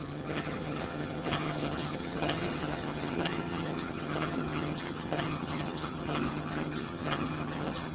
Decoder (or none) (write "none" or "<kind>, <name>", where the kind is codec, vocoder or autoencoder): vocoder, HiFi-GAN